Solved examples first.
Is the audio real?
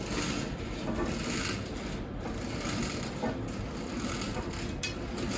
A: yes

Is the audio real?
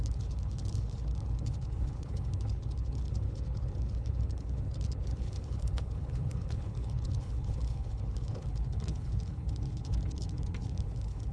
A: no